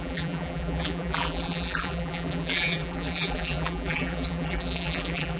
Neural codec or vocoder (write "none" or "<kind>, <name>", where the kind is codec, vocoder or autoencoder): vocoder, BigVGAN v2